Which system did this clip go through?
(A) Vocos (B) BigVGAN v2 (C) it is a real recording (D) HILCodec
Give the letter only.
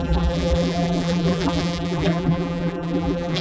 B